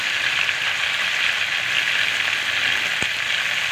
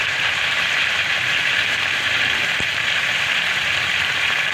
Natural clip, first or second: first